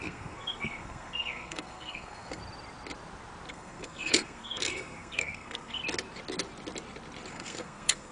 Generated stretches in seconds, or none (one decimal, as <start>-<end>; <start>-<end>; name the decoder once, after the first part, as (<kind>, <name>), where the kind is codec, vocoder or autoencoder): 0.0-2.4 (codec, SNAC); 3.5-5.8; 7.3-8.1